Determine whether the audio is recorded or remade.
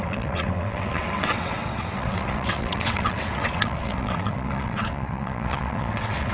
remade